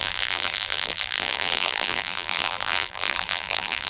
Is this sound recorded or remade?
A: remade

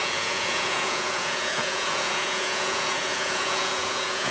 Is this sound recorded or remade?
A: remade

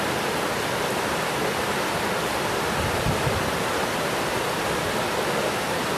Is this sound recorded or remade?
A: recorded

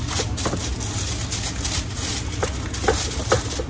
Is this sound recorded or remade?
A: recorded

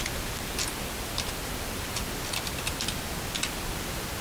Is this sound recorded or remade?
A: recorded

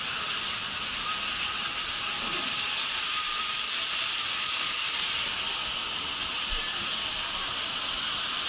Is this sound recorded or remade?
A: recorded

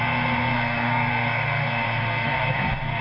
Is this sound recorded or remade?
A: remade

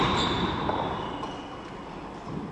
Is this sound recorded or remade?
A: recorded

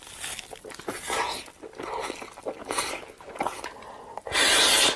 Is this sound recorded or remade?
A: recorded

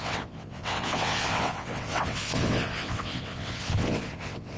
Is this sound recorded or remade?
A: remade